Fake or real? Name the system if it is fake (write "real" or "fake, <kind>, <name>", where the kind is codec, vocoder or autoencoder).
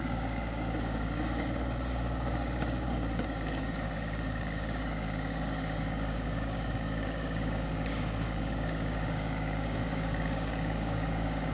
fake, codec, DAC